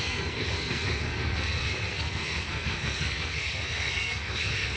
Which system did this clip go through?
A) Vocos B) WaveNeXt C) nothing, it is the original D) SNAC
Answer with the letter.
D